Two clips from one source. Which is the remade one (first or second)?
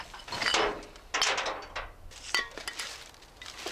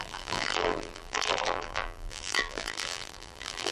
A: second